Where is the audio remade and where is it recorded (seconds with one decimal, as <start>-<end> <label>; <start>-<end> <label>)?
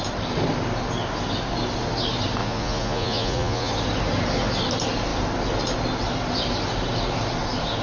0.0-2.4 recorded; 2.4-3.7 remade; 3.7-7.8 recorded